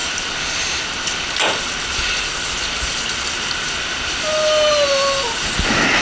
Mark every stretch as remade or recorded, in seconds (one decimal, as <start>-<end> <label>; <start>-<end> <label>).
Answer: 0.0-6.0 recorded